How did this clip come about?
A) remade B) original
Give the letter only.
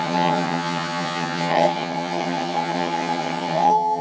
A